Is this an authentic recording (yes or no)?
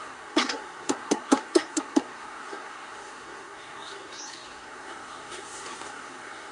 no